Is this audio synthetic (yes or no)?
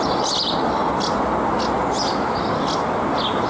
no